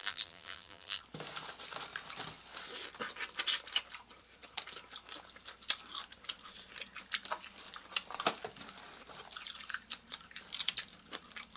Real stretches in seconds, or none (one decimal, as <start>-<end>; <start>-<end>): 1.0-11.6